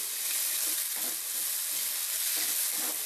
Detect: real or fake real